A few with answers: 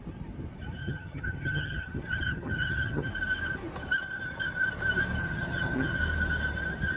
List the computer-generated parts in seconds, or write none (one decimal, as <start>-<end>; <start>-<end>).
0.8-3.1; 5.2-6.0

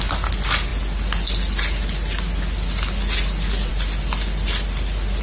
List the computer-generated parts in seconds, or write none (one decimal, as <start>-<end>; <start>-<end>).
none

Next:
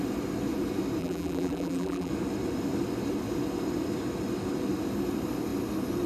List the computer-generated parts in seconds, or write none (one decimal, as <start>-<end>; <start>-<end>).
1.0-2.1